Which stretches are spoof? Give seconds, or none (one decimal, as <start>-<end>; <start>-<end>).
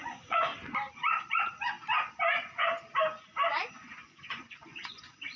0.0-0.5; 3.7-5.4